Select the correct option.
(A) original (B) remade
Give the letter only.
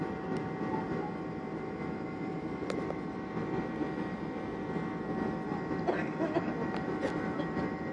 A